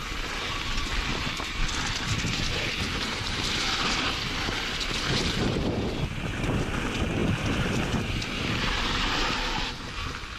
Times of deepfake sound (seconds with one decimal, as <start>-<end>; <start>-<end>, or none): 1.1-4.7; 7.2-8.0

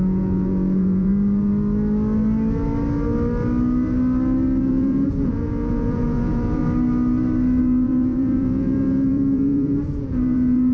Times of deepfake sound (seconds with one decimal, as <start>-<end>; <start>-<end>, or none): 0.0-1.1; 4.7-6.6; 7.6-10.7

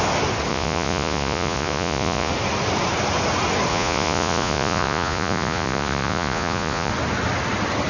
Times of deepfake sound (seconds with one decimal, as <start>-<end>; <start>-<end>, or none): 0.5-2.3; 3.7-6.9

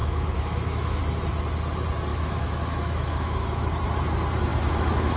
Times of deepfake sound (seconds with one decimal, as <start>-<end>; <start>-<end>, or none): 0.0-1.0; 2.1-3.8; 4.5-5.2

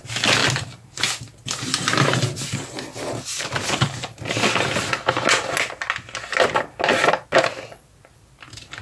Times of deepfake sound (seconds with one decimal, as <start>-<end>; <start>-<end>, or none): none

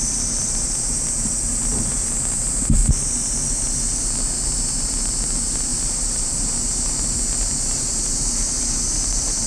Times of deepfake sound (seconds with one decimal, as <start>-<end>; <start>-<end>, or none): 0.0-2.8; 3.5-9.5

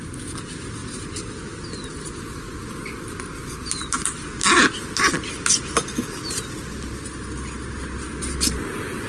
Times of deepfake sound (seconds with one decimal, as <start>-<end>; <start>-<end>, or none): none

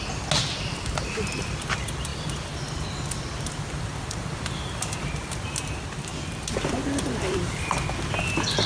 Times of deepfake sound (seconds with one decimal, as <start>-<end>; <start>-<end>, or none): none